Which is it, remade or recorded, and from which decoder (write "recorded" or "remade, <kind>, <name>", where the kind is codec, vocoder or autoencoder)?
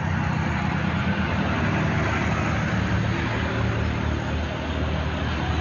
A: recorded